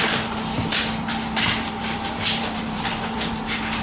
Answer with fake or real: fake